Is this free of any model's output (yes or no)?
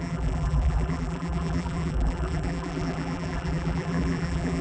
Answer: no